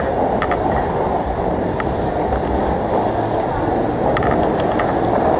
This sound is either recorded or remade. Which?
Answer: recorded